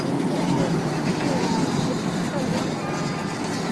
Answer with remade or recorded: recorded